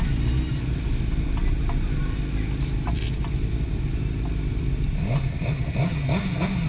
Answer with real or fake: real